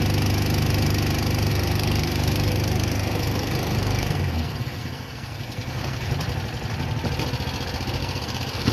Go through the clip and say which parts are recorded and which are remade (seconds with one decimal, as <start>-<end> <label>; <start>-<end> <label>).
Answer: 0.0-1.5 recorded; 1.5-6.1 remade; 6.1-8.0 recorded; 8.0-8.7 remade